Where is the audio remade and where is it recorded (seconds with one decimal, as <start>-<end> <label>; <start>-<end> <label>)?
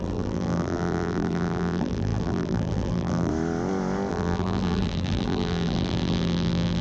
0.0-3.3 remade; 3.3-4.1 recorded; 4.1-6.8 remade